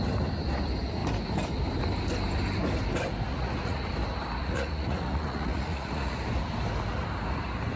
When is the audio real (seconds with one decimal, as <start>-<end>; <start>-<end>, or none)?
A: 0.0-3.3; 3.9-4.4; 6.2-7.8